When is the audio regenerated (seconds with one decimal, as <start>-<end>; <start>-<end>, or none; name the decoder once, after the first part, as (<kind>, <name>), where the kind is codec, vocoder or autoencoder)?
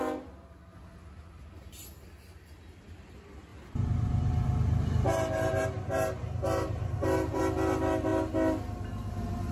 3.5-7.4 (vocoder, BigVGAN v2)